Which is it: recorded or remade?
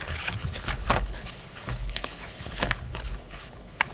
remade